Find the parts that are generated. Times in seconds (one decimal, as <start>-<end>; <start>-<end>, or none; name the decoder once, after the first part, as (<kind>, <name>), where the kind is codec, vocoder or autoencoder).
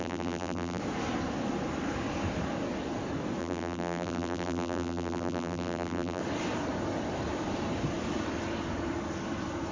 0.0-0.8 (vocoder, BigVGAN v2); 3.4-6.2